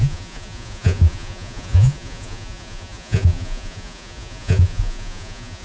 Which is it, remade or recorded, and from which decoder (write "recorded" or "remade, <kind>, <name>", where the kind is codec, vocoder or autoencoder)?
remade, vocoder, Vocos